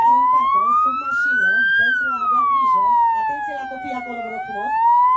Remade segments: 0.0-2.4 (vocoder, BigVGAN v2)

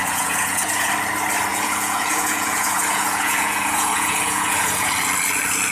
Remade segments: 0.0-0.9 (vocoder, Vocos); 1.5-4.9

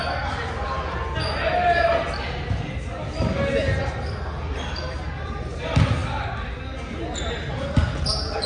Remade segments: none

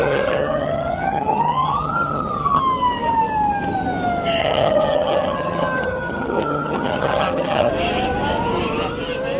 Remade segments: 0.0-2.6 (vocoder, HiFi-GAN); 4.4-7.7

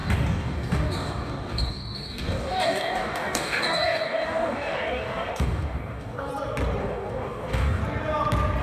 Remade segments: 0.0-6.3 (codec, DAC); 6.8-7.8